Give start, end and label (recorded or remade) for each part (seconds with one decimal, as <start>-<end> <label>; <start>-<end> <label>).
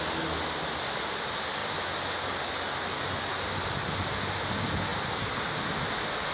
0.0-6.3 recorded